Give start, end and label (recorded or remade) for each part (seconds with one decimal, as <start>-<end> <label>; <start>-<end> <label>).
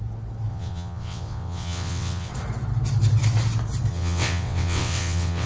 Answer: 0.0-0.5 recorded; 0.5-2.3 remade; 2.3-3.9 recorded; 3.9-5.5 remade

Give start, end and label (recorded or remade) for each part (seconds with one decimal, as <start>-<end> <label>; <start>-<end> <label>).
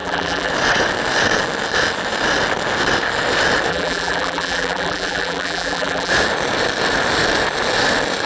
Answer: 0.0-0.5 remade; 0.5-3.7 recorded; 3.7-6.1 remade; 6.1-8.3 recorded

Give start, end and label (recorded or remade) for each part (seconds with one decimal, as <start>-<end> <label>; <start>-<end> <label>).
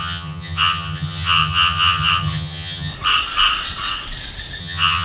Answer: 0.0-2.9 remade; 2.9-4.6 recorded; 4.6-5.0 remade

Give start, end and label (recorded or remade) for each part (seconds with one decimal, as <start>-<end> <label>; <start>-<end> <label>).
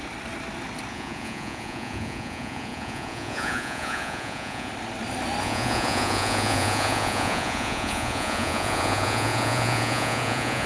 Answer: 0.0-0.9 recorded; 0.9-4.7 remade; 4.7-5.4 recorded; 5.4-10.7 remade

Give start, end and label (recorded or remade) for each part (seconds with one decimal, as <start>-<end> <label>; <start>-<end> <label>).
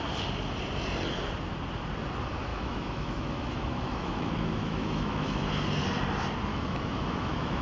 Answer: 0.0-2.5 recorded; 2.5-5.4 remade; 5.4-6.5 recorded; 6.5-7.6 remade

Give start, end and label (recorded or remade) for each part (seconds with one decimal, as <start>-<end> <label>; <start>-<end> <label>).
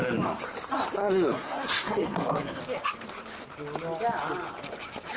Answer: 0.0-1.0 recorded; 1.0-2.6 remade; 2.6-5.2 recorded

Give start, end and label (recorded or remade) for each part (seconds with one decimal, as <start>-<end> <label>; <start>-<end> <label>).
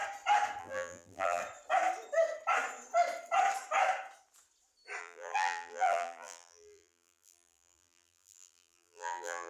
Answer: 0.0-0.6 recorded; 0.6-1.4 remade; 1.4-5.0 recorded; 5.0-9.5 remade